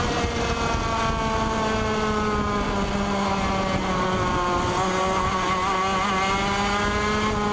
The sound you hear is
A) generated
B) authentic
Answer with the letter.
B